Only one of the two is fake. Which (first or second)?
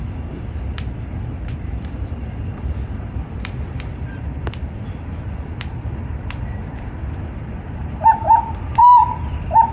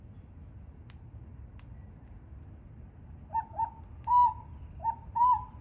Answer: first